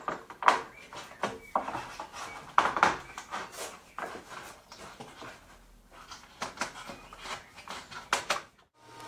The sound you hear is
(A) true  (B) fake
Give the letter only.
A